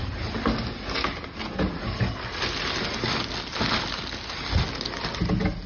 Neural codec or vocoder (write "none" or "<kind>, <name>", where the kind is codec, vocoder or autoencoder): none